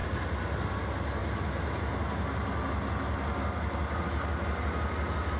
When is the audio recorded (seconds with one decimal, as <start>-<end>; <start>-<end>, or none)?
0.0-5.4